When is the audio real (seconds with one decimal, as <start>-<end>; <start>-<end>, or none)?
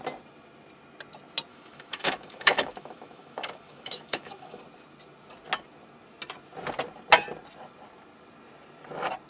0.0-1.5; 4.6-9.3